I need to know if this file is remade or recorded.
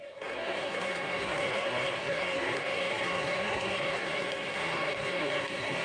remade